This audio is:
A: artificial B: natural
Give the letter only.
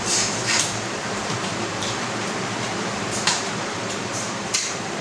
A